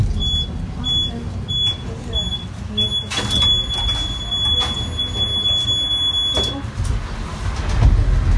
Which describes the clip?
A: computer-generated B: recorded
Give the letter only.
B